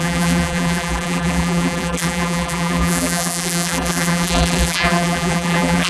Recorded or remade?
remade